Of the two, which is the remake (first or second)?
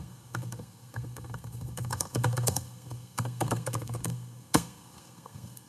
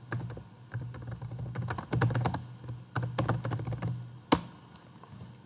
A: first